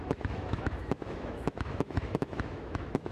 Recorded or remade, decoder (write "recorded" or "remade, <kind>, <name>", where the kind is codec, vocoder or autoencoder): remade, autoencoder, DAC-VAE